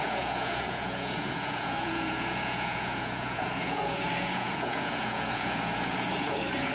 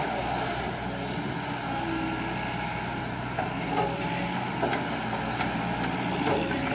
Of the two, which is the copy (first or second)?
first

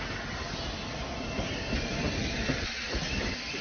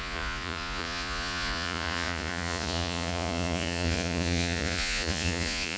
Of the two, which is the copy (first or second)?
second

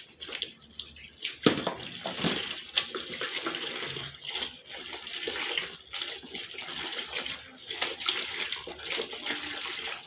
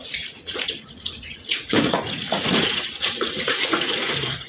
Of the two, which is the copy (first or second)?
second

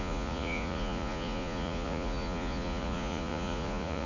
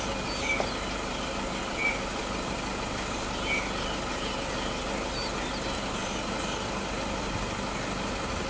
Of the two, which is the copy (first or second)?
first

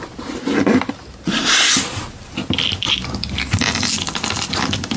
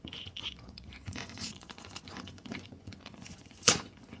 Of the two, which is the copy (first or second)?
second